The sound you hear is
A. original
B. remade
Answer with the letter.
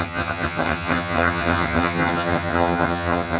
B